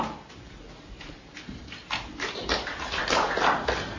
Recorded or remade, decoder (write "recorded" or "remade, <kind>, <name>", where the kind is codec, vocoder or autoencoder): recorded